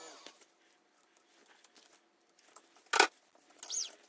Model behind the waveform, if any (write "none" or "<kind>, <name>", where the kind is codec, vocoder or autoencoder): none